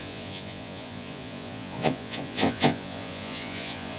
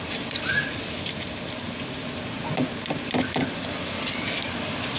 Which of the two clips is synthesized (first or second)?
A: first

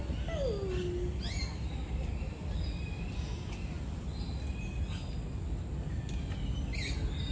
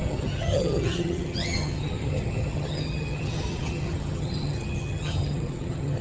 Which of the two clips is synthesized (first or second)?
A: second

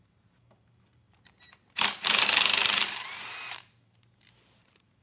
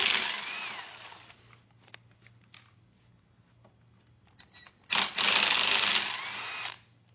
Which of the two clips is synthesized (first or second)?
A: first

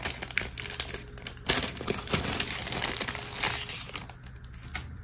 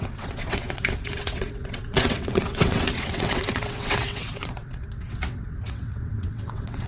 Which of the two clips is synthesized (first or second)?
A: second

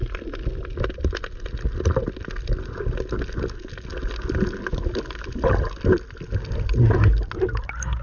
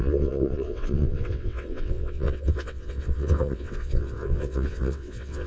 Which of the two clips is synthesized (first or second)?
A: second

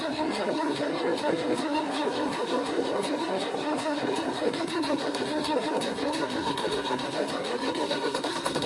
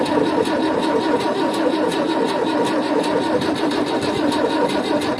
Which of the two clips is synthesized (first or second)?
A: first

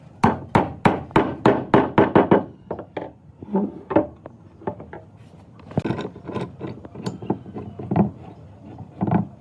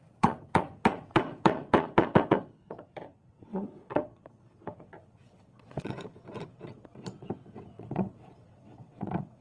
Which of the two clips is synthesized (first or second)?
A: second